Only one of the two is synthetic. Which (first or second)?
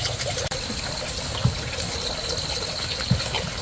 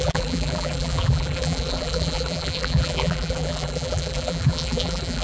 second